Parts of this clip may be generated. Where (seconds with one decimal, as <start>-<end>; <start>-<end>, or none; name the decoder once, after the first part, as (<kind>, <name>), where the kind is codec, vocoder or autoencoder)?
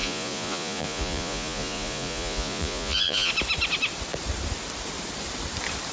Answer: 0.0-3.3 (vocoder, Vocos)